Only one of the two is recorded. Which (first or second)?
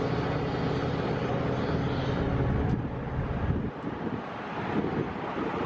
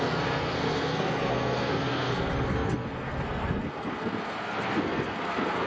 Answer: first